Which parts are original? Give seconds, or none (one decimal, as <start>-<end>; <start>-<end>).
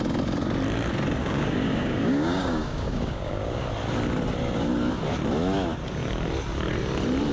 0.0-1.2; 3.7-7.3